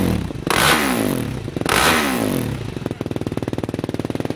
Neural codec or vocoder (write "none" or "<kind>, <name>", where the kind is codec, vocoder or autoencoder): none